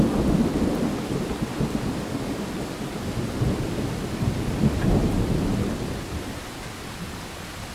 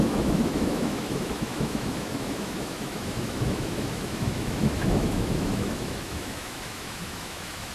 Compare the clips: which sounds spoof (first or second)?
second